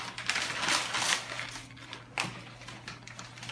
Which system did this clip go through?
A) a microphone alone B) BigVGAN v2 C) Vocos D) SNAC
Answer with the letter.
A